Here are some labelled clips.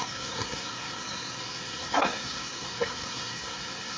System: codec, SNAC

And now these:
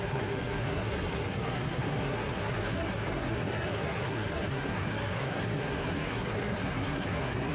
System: codec, SNAC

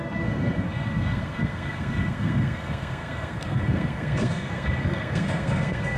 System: codec, SNAC